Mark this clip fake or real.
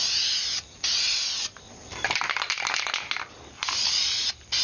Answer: real